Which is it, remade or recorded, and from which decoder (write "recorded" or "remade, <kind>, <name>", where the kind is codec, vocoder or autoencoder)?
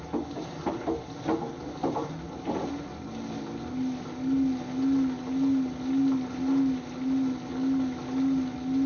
recorded